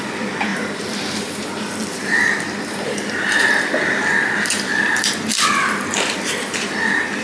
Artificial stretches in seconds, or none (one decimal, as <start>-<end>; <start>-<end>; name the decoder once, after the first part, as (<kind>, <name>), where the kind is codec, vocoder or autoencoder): 0.0-7.2 (vocoder, BigVGAN v2)